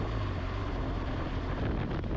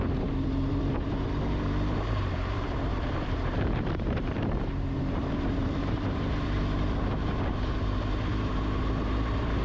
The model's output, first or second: second